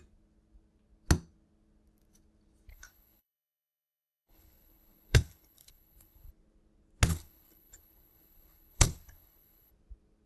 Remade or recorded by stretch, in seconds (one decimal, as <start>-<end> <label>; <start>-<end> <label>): 0.0-2.7 recorded; 2.7-6.3 remade; 6.3-7.1 recorded; 7.1-9.7 remade; 9.7-10.3 recorded